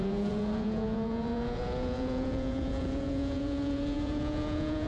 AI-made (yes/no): yes